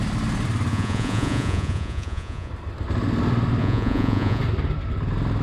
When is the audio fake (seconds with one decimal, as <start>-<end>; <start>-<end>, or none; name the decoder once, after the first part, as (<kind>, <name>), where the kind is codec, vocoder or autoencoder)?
0.7-2.5 (vocoder, Vocos); 3.6-4.4